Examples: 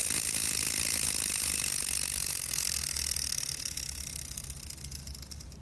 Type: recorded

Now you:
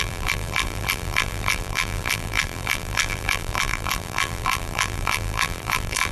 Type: remade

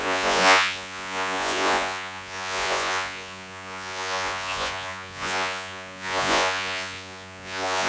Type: remade